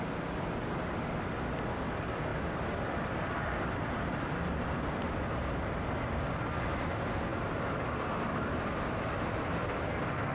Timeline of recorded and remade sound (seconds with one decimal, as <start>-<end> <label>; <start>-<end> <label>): 0.0-10.3 recorded

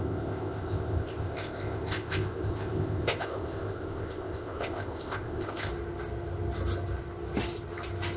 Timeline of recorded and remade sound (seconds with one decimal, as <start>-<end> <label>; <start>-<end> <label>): 0.0-5.7 remade; 5.7-8.2 recorded

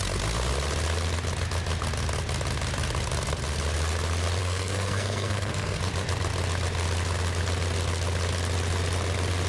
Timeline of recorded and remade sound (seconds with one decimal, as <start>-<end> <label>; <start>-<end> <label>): 0.0-4.4 recorded; 4.4-5.8 remade; 5.8-9.5 recorded

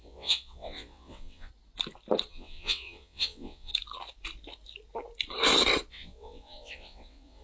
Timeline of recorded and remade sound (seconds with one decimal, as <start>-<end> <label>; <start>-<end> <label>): 0.0-1.5 remade; 1.5-2.3 recorded; 2.3-3.7 remade; 3.7-5.9 recorded; 5.9-7.4 remade